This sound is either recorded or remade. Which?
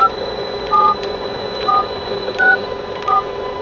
remade